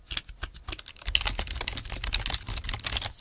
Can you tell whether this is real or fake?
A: real